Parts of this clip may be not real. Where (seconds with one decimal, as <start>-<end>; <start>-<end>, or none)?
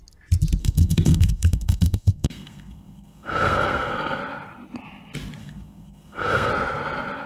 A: 0.6-4.2; 5.4-6.5